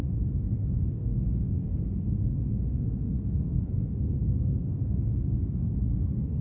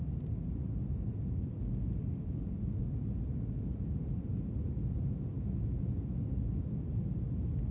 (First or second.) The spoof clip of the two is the first